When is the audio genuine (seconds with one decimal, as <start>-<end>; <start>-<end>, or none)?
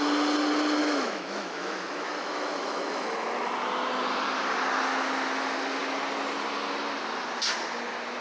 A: 0.0-0.8; 3.4-8.2